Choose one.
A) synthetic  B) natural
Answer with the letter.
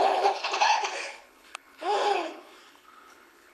A